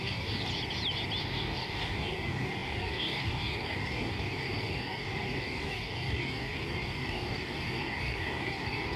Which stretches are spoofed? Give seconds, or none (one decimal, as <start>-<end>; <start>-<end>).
0.0-0.5; 1.2-9.0